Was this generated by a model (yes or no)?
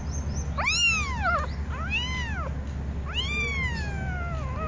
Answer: no